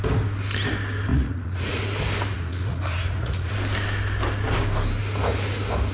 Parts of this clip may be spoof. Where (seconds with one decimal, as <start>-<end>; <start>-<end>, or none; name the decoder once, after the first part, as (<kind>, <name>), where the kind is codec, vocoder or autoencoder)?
1.1-1.8 (vocoder, Vocos); 2.3-3.5